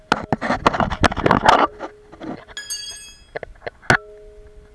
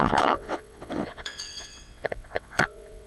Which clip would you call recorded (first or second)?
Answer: first